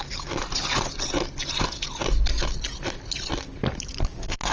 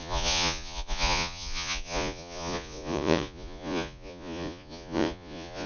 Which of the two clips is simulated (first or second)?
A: second